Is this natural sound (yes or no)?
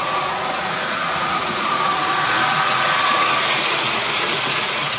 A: no